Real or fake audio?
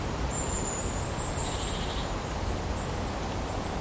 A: real